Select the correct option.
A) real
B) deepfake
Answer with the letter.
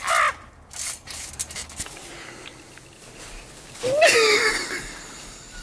A